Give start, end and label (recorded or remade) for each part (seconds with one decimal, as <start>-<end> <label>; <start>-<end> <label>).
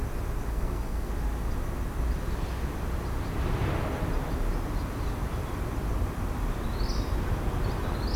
0.0-0.5 recorded; 0.5-1.1 remade; 1.1-8.2 recorded